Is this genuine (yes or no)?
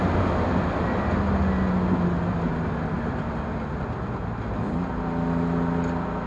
yes